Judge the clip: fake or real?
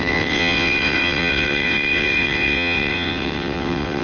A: fake